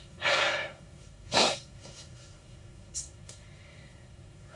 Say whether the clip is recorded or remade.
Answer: remade